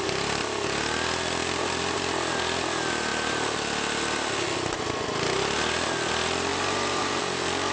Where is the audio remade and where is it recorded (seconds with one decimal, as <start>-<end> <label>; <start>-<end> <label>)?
0.0-1.4 recorded; 1.4-2.0 remade; 2.0-6.5 recorded; 6.5-7.2 remade; 7.2-7.7 recorded